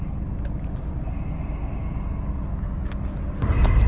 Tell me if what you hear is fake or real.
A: real